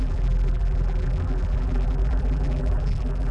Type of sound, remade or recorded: remade